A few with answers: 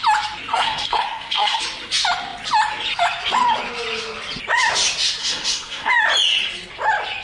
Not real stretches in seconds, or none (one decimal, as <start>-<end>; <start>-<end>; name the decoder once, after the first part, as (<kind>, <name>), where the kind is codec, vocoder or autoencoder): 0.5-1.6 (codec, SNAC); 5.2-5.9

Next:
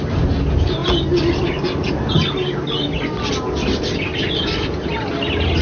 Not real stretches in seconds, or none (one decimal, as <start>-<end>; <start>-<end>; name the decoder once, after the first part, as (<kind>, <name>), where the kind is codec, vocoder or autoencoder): none

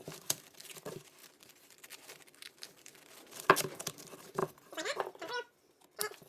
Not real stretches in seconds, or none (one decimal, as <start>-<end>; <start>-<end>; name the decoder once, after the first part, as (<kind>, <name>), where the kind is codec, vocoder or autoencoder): 0.0-2.9 (vocoder, BigVGAN v2); 3.5-6.3

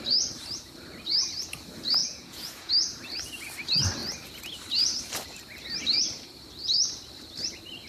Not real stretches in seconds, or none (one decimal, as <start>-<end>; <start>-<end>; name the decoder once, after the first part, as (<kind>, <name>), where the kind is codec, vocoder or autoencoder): 2.0-2.7 (vocoder, Vocos)